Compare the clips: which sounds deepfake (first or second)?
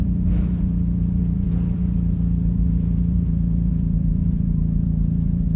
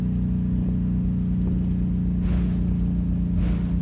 first